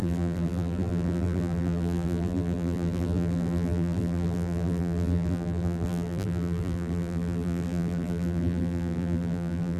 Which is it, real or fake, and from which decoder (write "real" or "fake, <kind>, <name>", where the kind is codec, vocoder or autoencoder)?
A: fake, vocoder, BigVGAN v2